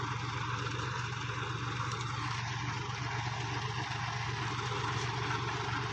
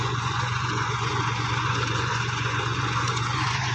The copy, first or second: second